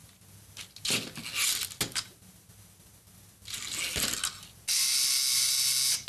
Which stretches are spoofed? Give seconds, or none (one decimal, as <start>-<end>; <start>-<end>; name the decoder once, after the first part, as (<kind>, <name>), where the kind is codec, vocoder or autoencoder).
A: none